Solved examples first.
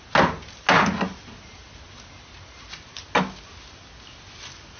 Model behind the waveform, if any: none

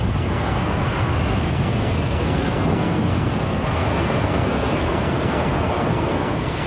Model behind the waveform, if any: codec, SNAC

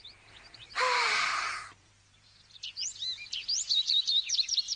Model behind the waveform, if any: vocoder, BigVGAN v2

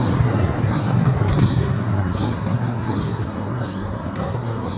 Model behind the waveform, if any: codec, SNAC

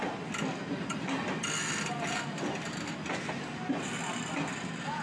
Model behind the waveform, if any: none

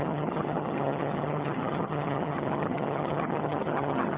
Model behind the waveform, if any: vocoder, HiFi-GAN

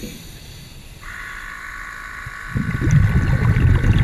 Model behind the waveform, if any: none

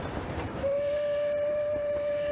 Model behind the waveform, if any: vocoder, BigVGAN v2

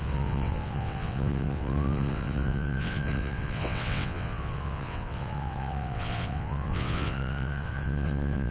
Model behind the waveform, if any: vocoder, WaveNeXt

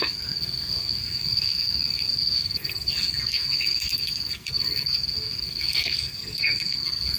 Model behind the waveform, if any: codec, SNAC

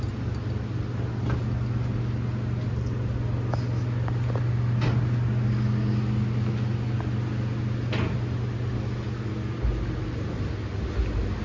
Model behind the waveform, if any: none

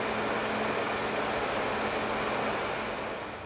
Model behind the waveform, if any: none